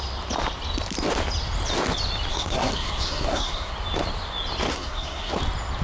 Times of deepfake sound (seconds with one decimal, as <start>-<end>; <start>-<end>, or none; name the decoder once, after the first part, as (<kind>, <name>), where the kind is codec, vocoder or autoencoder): 2.3-3.7 (codec, SNAC); 4.7-5.3

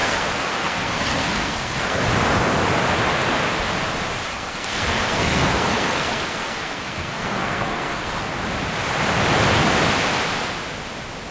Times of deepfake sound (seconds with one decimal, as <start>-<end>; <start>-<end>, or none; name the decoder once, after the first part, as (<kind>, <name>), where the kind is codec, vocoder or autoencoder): 0.0-2.0 (codec, SNAC); 4.3-8.3

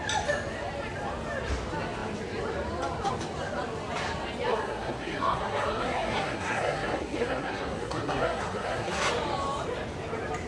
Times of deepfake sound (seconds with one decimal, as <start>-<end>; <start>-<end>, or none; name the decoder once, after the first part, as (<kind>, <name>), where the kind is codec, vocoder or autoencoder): 4.5-9.1 (codec, SNAC)

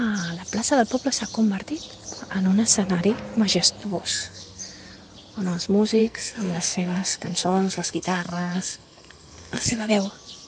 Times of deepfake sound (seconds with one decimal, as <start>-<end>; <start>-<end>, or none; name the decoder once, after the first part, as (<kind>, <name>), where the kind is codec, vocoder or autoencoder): 3.8-4.6 (codec, SNAC); 6.0-9.9